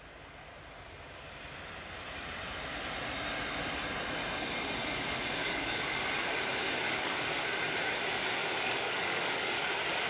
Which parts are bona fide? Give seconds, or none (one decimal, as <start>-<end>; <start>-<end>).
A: 0.0-5.4; 7.4-8.2; 9.7-10.1